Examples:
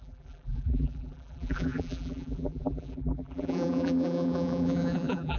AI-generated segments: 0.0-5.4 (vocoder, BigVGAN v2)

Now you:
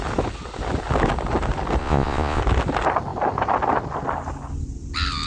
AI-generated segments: 1.8-2.4 (vocoder, Vocos)

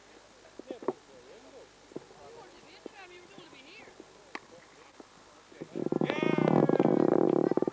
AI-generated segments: none